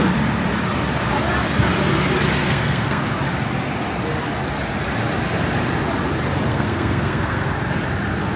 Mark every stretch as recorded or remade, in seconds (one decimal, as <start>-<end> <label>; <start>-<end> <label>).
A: 0.0-2.4 recorded; 2.4-3.0 remade; 3.0-6.5 recorded; 6.5-7.5 remade; 7.5-8.4 recorded